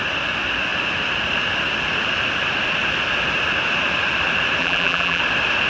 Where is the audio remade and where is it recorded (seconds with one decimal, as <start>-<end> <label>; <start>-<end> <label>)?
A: 0.0-4.6 recorded; 4.6-5.2 remade; 5.2-5.7 recorded